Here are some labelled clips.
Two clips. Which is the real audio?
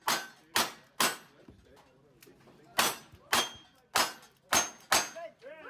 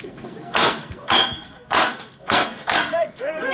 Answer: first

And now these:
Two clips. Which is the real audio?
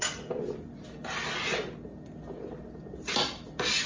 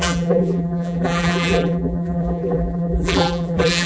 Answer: first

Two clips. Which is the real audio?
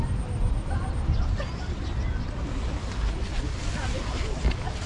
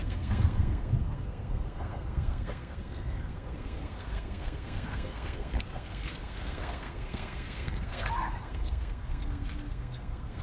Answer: first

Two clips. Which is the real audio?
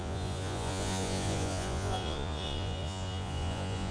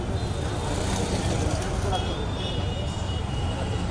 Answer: second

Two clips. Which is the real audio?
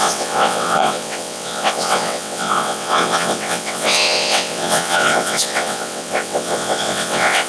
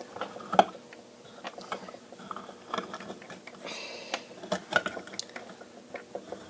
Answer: second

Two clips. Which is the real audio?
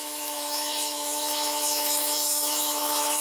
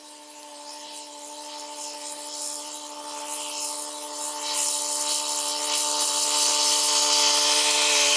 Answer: second